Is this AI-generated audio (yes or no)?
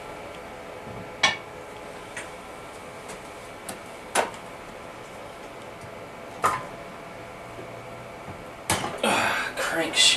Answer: no